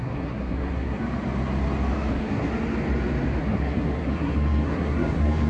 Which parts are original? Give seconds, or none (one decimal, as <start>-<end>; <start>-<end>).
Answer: 1.0-2.1; 2.5-3.4